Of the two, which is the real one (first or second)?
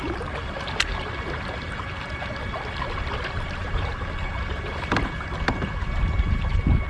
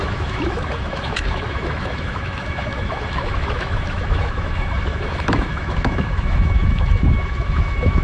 first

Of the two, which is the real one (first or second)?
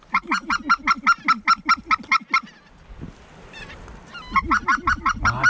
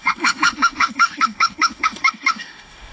first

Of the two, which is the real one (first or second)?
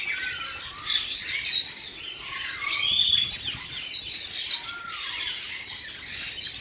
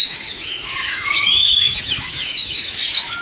first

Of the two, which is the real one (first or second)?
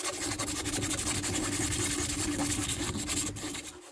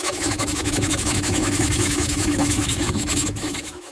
first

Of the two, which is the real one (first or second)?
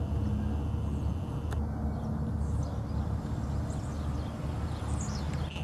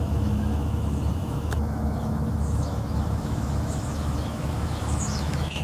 first